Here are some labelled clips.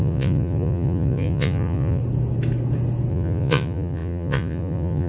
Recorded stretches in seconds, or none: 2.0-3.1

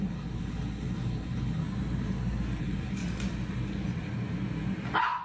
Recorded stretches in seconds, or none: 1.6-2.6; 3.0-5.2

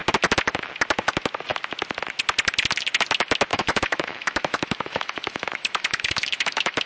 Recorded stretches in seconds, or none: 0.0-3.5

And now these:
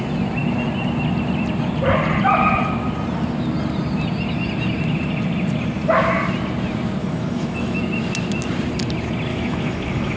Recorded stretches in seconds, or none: 0.0-7.0; 7.8-9.3

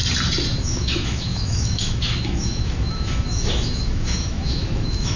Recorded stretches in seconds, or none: 0.0-0.6

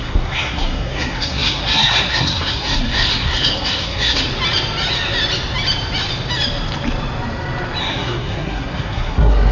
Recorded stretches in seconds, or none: 4.3-7.8

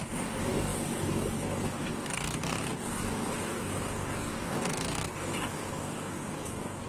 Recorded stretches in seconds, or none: none